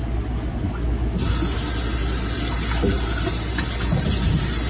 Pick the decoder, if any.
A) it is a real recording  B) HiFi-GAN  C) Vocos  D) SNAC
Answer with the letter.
A